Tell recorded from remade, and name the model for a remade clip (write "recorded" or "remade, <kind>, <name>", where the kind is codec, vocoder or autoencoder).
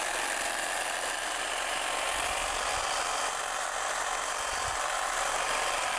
remade, vocoder, BigVGAN v2